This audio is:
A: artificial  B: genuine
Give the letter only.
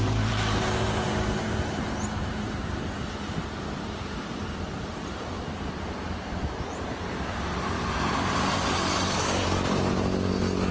A